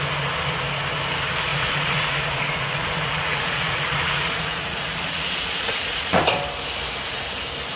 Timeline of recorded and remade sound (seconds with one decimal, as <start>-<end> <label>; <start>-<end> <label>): 0.0-1.5 recorded; 1.5-6.2 remade; 6.2-7.8 recorded